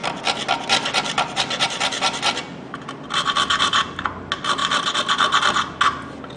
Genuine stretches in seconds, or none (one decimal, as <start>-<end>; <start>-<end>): 0.0-6.4